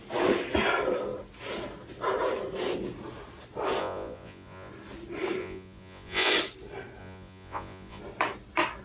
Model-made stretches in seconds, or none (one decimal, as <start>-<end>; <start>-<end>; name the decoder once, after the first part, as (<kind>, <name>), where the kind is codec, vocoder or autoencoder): 3.8-4.7 (vocoder, Vocos); 5.4-6.3; 7.0-8.0